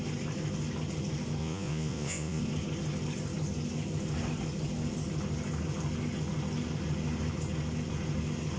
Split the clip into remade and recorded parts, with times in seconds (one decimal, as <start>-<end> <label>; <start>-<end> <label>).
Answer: 0.0-1.4 recorded; 1.4-2.4 remade; 2.4-8.6 recorded